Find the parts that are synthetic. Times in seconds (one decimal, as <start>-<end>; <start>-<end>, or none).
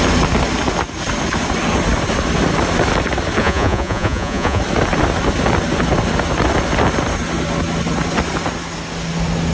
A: 3.4-4.6